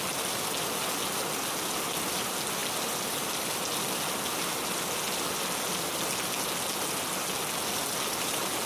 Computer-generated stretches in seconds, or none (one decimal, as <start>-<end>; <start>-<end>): none